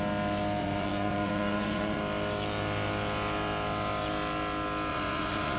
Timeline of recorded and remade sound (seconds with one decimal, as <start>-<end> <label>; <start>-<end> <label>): 0.0-0.6 recorded; 0.6-2.0 remade; 2.0-4.9 recorded; 4.9-5.6 remade